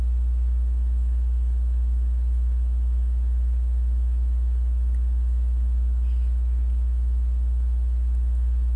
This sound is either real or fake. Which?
real